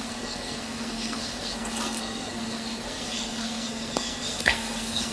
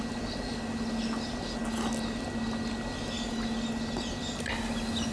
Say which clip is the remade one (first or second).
first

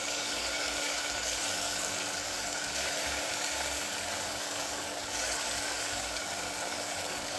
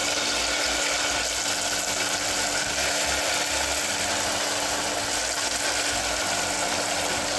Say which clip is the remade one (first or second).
first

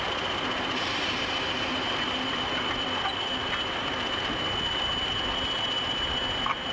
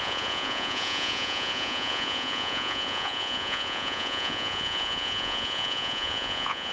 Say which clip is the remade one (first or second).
second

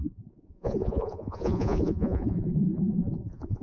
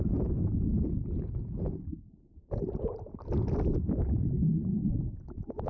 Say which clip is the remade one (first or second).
first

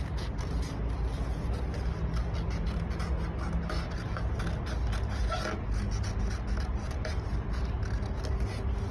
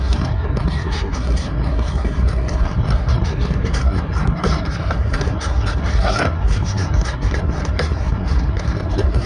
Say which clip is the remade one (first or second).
second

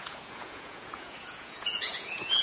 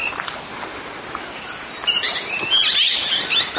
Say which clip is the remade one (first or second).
first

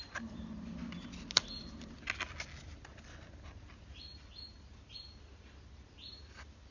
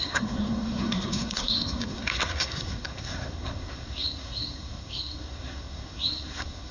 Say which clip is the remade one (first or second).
second